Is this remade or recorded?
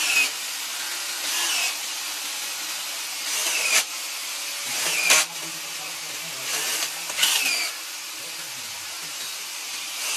recorded